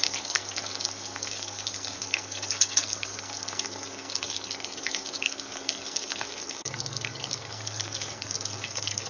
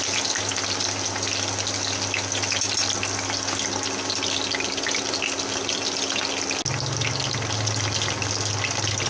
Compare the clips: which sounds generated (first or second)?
first